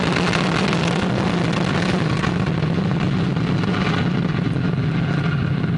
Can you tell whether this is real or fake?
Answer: real